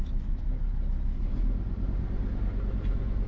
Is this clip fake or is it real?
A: real